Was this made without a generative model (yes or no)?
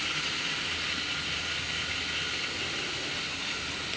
yes